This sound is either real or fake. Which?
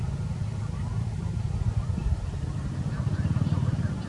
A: fake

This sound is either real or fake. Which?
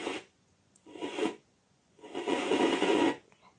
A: fake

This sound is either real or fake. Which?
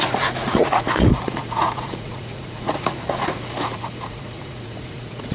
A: fake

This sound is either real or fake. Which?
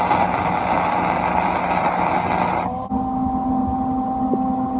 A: real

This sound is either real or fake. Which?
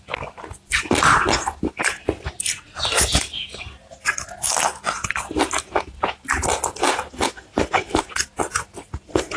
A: real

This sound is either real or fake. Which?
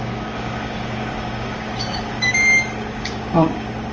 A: fake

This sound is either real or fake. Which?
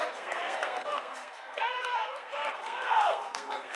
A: fake